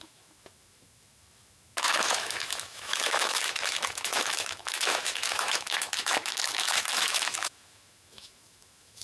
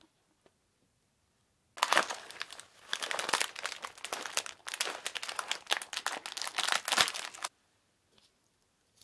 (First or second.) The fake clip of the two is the first